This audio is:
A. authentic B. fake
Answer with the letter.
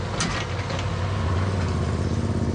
A